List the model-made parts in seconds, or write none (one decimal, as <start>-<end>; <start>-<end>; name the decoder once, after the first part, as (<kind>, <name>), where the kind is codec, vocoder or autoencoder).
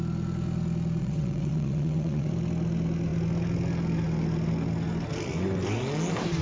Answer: 1.0-2.3 (vocoder, WaveNeXt)